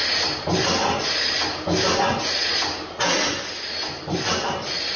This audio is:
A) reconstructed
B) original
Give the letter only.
B